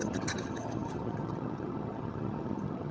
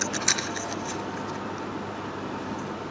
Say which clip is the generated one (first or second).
first